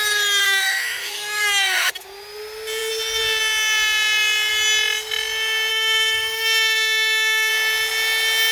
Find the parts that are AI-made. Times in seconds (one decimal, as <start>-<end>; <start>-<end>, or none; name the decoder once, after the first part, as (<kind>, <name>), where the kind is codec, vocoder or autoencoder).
0.4-1.9 (autoencoder, DAC-VAE); 5.7-7.5